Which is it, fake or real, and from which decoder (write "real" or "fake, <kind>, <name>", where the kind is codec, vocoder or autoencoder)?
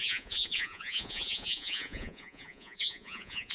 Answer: fake, vocoder, Vocos